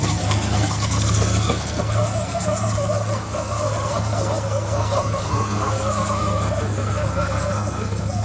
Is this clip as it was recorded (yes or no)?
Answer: no